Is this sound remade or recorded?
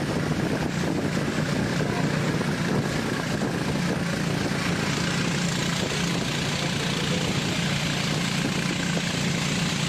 recorded